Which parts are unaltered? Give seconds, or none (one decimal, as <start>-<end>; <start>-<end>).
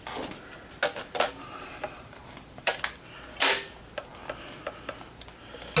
0.0-1.0; 2.8-5.8